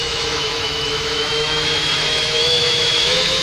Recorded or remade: remade